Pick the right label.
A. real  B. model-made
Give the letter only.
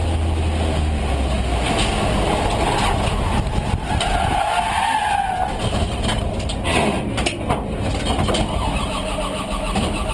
A